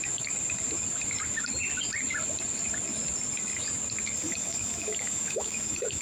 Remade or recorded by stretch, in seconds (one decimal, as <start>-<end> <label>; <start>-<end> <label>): 0.0-4.2 recorded; 4.2-6.0 remade